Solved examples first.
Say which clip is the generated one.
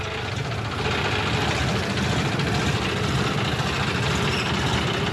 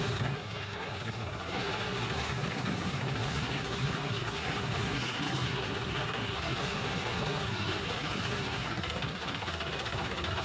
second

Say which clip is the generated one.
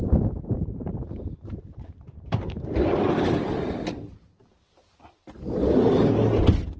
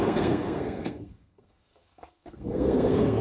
second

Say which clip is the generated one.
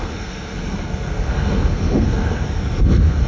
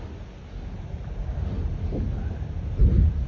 first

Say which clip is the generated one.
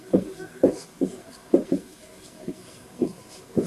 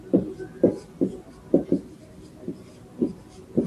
first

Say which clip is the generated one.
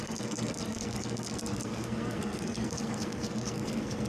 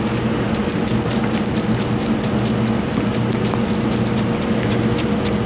first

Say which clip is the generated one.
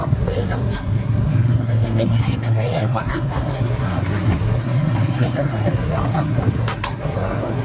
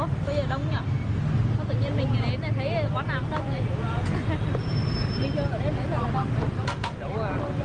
first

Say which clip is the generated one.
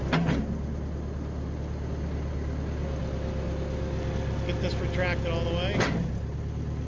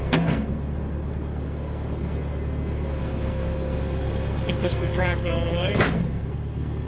second